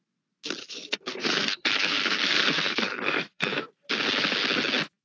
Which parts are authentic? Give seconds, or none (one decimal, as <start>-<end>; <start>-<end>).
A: 0.0-0.6; 3.6-5.0